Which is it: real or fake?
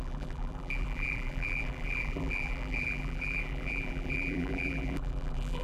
fake